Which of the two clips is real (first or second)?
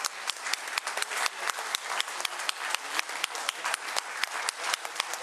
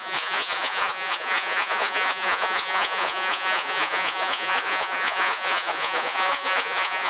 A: first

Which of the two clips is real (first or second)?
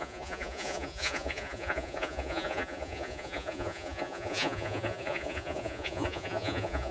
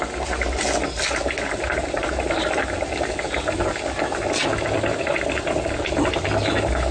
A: second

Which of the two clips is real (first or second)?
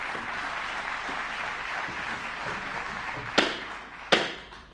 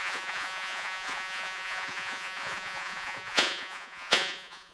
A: first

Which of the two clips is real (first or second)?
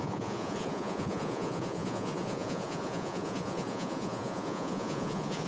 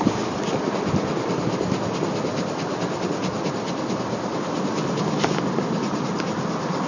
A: second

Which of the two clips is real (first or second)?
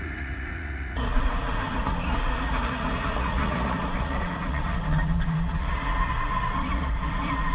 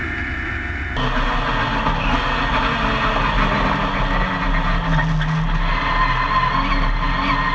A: second